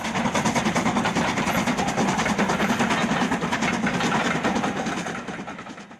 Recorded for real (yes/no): yes